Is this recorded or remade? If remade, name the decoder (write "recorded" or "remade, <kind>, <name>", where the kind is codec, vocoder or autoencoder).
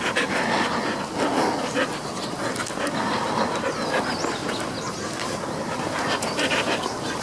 recorded